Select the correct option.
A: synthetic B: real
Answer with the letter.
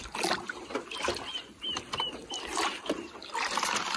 B